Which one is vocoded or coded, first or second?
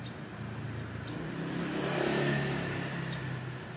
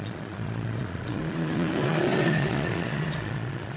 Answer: second